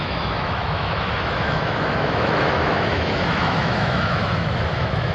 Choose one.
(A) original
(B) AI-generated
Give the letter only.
B